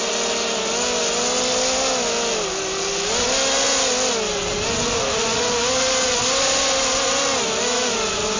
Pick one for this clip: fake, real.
real